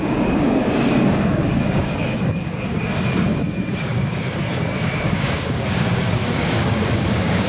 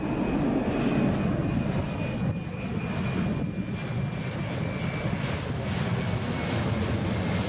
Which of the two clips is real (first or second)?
second